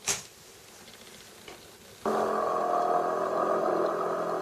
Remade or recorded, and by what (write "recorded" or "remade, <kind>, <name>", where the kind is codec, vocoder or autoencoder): recorded